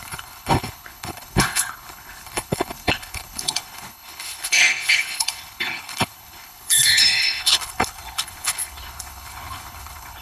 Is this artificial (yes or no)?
yes